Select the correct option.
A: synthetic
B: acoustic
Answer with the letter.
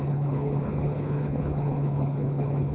A